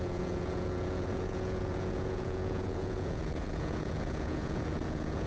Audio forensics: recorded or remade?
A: remade